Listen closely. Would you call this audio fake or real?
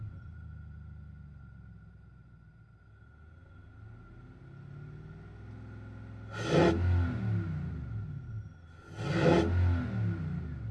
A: real